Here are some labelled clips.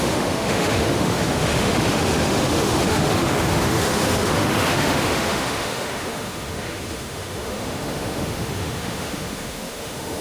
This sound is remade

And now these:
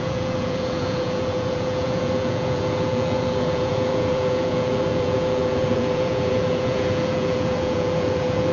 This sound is remade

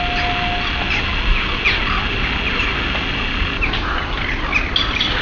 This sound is recorded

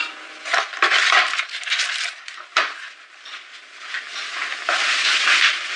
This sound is recorded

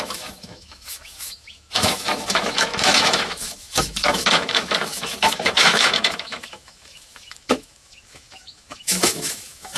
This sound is remade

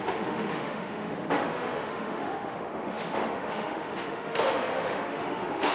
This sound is remade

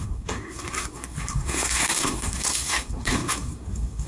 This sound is remade